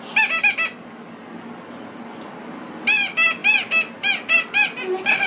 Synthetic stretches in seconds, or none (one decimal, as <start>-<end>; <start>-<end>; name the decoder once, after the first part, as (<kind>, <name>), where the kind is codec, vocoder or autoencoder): none